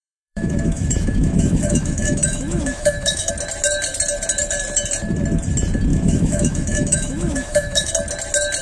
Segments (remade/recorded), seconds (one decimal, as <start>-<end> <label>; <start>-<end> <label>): 0.0-3.3 remade; 3.3-5.9 recorded; 5.9-7.9 remade; 7.9-8.6 recorded